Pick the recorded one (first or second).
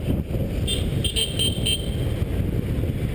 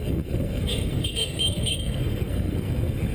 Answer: first